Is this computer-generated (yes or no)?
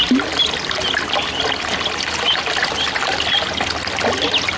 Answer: no